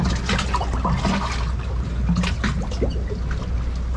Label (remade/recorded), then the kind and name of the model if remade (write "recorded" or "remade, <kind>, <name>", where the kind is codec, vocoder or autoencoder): recorded